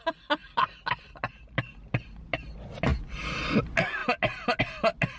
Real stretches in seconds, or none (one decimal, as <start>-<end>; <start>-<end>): 0.0-5.2